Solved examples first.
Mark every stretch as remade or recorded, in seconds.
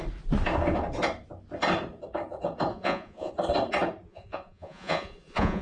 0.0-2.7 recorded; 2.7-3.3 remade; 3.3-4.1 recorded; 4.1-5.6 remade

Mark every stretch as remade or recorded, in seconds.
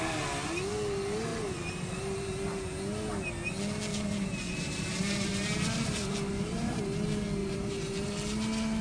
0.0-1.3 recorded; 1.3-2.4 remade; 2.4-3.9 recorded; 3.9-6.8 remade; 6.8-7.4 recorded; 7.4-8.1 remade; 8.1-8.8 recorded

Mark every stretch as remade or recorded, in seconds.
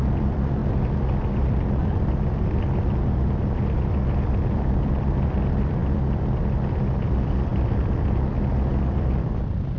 0.0-5.8 remade; 5.8-6.7 recorded; 6.7-9.8 remade